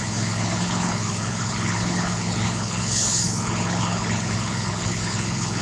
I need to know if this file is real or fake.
fake